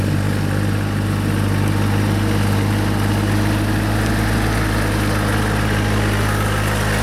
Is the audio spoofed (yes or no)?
no